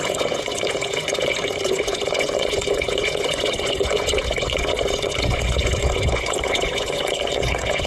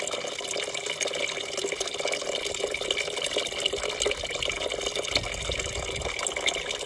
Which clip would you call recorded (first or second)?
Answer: second